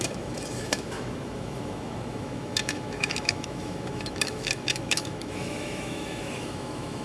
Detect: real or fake fake